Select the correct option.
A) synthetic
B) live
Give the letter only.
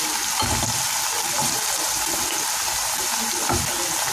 B